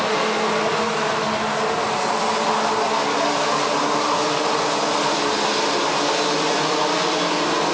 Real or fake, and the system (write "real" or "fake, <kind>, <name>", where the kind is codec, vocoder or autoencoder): real